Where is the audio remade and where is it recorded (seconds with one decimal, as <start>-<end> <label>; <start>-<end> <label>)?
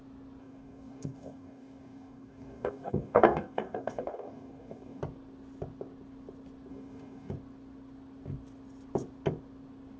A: 0.0-0.4 recorded; 0.4-5.0 remade; 5.0-6.7 recorded; 6.7-7.3 remade; 7.3-10.0 recorded